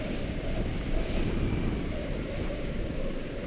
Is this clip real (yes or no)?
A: yes